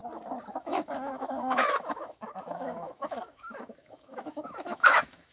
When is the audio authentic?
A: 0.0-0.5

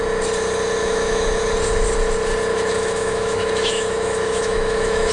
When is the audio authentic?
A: 0.0-0.8; 1.4-2.5

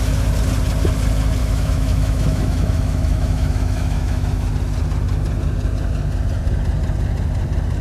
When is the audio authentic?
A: 0.0-1.4; 4.5-7.8